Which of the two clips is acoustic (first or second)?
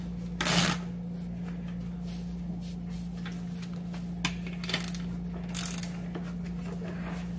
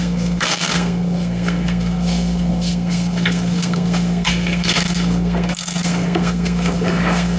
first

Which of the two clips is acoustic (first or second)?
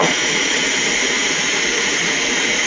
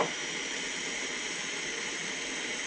second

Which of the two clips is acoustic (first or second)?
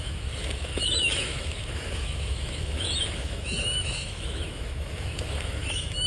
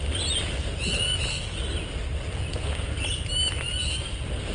second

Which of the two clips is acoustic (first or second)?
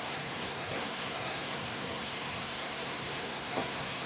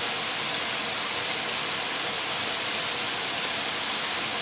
second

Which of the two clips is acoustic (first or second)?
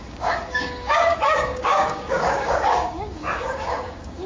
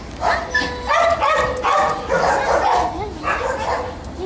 second